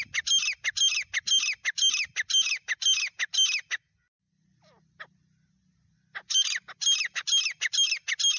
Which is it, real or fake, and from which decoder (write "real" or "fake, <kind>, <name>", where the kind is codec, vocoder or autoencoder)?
real